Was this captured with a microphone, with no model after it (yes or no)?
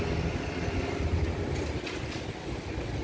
yes